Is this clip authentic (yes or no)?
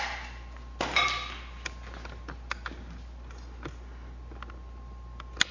yes